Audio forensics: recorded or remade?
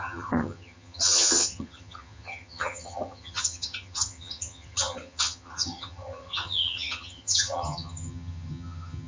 remade